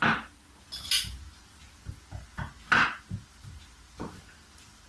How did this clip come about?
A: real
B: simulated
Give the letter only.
A